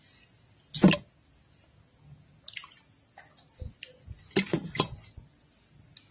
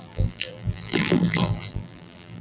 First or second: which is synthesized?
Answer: second